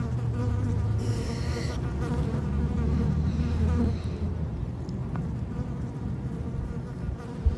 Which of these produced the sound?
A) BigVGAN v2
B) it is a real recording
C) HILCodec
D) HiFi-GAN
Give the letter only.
B